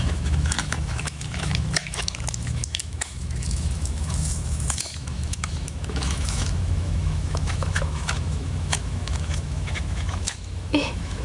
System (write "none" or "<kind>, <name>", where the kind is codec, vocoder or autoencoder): autoencoder, DAC-VAE